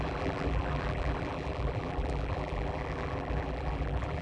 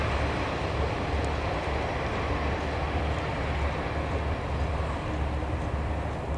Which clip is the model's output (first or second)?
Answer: first